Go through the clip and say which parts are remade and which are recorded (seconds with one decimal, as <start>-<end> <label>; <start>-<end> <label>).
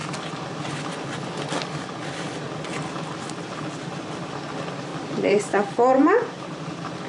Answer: 0.0-4.9 recorded; 4.9-6.6 remade; 6.6-7.1 recorded